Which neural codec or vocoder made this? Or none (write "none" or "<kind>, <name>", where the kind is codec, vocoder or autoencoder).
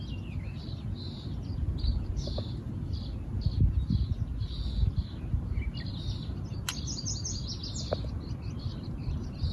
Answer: none